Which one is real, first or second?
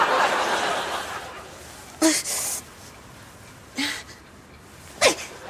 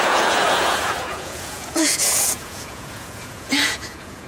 first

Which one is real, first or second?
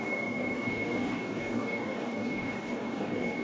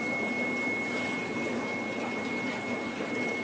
second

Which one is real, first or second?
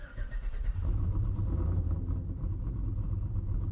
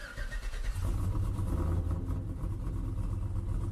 second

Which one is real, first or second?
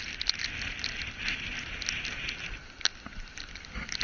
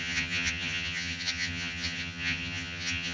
first